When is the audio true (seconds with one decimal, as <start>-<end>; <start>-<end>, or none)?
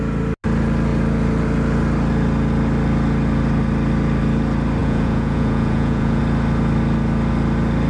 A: 0.0-4.8; 6.2-7.9